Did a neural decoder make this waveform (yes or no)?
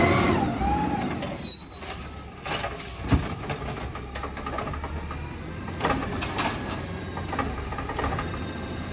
no